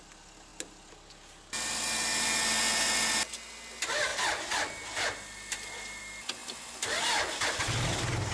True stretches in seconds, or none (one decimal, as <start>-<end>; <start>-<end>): 0.0-4.1; 6.0-8.3